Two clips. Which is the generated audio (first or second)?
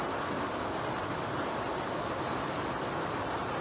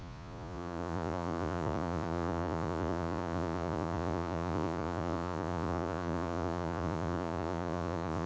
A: second